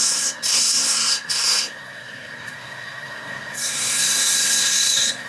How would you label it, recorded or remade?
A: remade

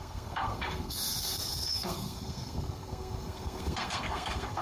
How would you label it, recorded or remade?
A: remade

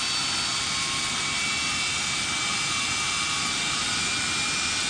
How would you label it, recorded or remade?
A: recorded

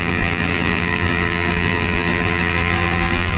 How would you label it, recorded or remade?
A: remade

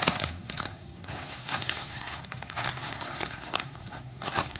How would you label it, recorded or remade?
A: remade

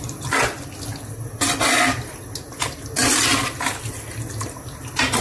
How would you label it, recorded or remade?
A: recorded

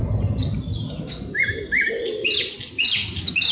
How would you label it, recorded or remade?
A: recorded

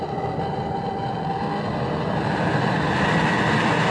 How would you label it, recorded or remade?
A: recorded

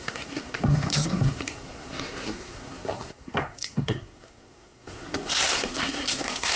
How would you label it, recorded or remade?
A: remade